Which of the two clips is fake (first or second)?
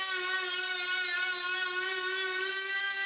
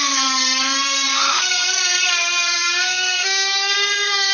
second